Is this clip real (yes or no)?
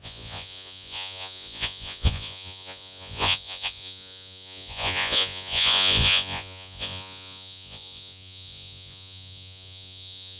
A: no